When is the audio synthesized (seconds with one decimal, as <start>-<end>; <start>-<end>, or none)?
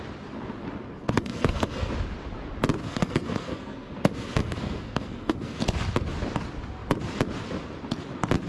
1.0-1.9; 2.8-5.6